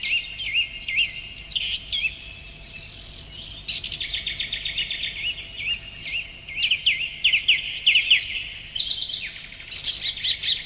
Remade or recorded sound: recorded